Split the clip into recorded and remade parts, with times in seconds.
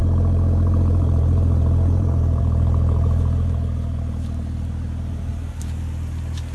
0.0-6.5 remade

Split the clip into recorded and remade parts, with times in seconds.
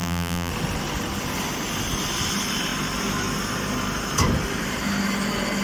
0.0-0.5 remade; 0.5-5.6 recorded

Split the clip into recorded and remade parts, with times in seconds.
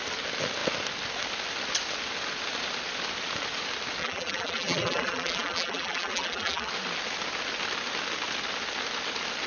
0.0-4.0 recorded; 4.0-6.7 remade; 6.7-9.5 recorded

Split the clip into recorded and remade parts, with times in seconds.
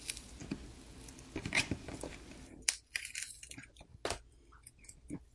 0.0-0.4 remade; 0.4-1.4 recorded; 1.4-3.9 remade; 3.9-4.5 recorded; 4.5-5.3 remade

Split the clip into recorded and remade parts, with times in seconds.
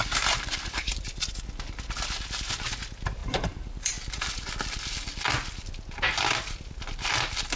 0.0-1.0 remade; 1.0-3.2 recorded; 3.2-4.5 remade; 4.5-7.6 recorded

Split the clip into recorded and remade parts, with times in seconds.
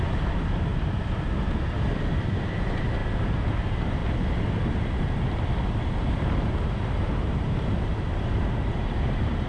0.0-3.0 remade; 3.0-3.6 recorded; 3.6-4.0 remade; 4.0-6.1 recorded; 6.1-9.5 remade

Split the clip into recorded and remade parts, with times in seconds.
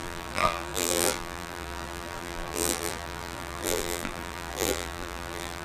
0.0-5.6 remade